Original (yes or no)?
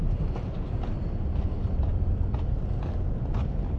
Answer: yes